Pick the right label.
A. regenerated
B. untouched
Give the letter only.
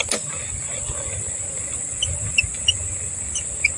B